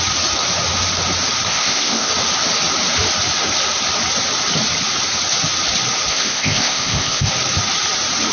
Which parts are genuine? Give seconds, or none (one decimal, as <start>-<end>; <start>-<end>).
0.0-1.5; 2.1-6.1; 7.3-8.3